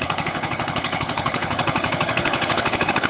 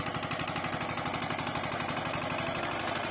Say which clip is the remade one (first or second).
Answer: first